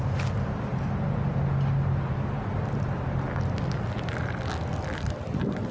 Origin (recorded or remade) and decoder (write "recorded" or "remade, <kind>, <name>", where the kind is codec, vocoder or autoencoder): recorded